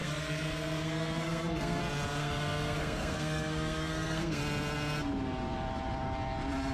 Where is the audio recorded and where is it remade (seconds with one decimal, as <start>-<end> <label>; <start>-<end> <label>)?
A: 0.0-1.8 remade; 1.8-2.2 recorded; 2.2-4.4 remade; 4.4-6.7 recorded